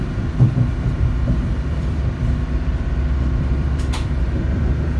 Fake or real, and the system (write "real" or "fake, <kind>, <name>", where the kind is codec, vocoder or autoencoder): fake, vocoder, BigVGAN v2